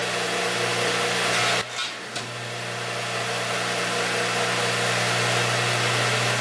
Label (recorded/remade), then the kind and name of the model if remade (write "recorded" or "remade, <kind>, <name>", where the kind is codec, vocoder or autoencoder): recorded